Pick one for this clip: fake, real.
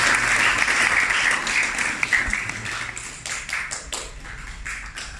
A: real